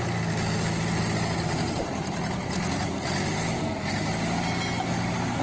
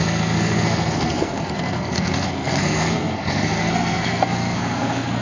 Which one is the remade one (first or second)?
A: second